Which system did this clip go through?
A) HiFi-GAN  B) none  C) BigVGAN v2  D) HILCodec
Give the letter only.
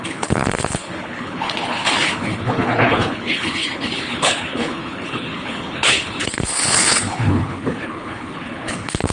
D